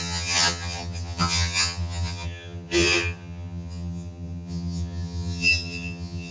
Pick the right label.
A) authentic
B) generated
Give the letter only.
B